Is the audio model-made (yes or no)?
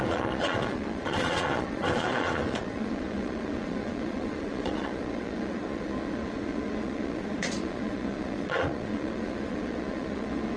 yes